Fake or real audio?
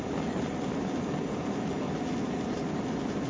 real